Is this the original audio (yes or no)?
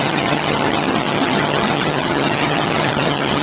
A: no